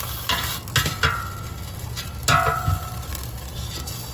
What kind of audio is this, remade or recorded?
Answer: recorded